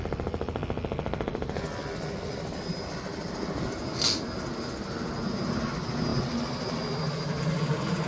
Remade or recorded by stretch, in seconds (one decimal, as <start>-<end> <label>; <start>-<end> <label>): 0.0-8.1 recorded